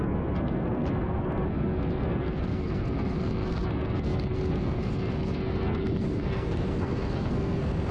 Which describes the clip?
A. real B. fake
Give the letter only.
B